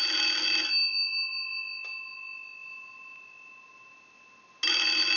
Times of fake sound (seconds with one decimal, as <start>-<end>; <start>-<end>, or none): none